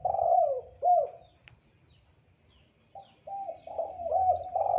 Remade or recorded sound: remade